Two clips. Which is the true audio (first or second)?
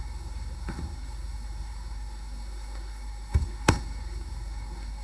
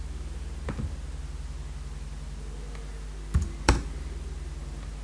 second